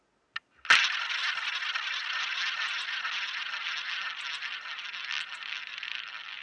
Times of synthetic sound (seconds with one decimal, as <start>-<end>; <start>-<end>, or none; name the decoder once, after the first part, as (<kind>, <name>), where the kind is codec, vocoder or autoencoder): none